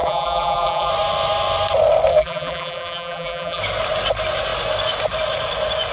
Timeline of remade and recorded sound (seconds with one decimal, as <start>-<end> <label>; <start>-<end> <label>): 0.0-0.9 remade; 0.9-2.1 recorded; 2.1-3.6 remade; 3.6-5.9 recorded